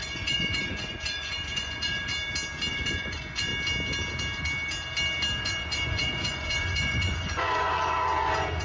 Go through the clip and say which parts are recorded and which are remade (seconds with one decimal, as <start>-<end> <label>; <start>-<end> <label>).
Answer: 0.0-2.1 remade; 2.1-2.7 recorded; 2.7-3.5 remade; 3.5-5.4 recorded; 5.4-8.6 remade